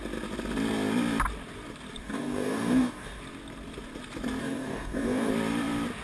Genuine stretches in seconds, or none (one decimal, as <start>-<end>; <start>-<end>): 0.0-2.0; 3.2-4.4; 5.3-6.0